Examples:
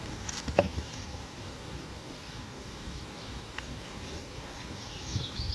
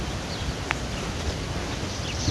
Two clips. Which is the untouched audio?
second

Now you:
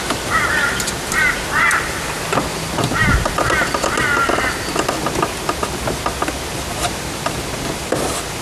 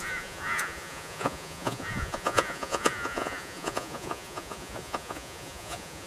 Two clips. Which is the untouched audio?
first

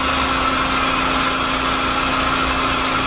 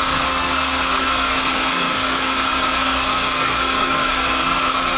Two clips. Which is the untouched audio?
first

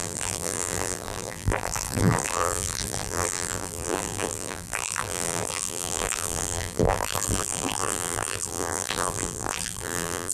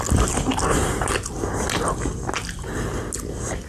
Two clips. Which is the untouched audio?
second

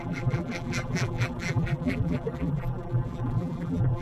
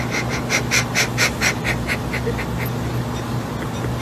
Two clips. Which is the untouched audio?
second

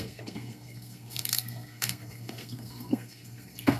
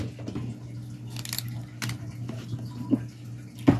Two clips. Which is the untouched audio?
second